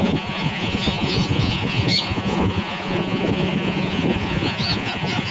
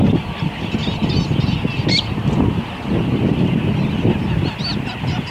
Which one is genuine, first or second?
second